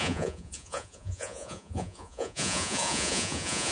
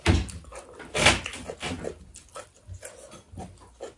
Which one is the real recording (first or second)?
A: second